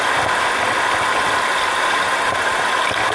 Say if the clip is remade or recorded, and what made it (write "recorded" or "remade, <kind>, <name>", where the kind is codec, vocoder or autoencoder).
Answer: recorded